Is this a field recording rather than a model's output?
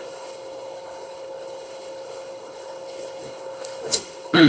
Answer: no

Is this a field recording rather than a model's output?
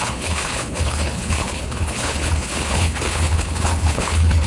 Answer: no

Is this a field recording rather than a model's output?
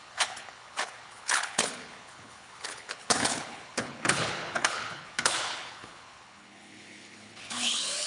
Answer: no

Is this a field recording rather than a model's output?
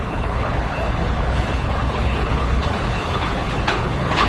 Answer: no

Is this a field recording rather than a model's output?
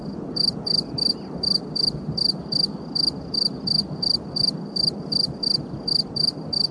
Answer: yes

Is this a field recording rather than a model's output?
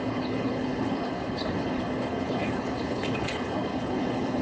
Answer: no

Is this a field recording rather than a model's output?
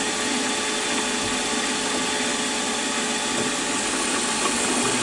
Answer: yes